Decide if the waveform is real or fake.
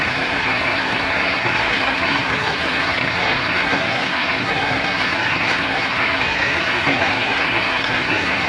fake